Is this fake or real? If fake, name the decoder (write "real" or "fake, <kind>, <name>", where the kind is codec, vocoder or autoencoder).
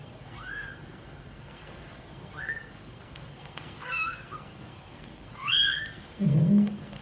fake, codec, SNAC